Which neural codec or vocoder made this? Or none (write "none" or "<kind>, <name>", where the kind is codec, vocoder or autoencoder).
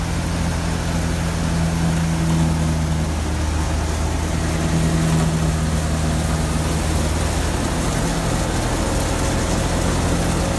none